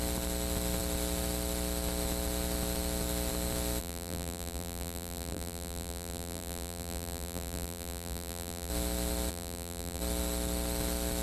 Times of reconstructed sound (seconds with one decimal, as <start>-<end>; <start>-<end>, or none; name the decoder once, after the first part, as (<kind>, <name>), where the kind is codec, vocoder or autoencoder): 3.8-8.7 (vocoder, BigVGAN v2); 9.3-10.0